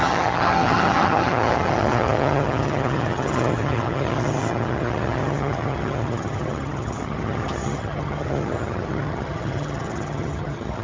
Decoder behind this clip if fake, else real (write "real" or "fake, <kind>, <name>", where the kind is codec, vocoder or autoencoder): fake, vocoder, HiFi-GAN